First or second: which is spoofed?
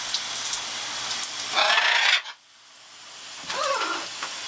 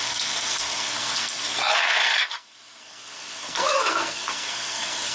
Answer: second